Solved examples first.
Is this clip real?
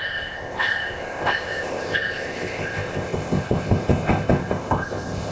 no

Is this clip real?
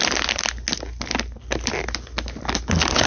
yes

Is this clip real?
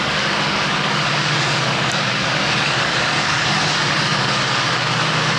no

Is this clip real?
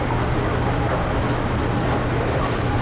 yes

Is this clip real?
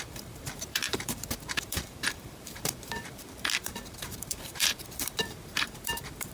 no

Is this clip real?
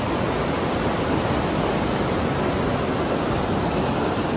yes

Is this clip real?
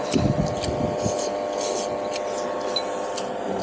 yes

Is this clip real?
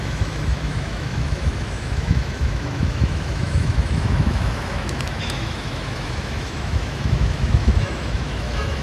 no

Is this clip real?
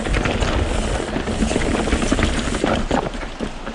yes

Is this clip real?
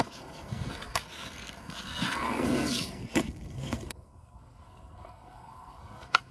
no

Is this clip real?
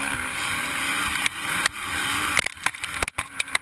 no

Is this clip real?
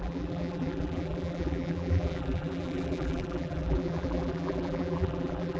no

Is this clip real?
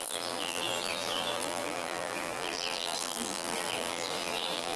no